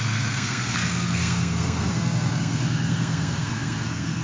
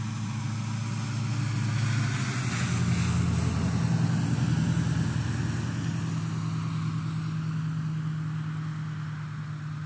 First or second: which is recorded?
second